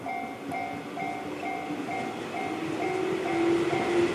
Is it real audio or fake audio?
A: real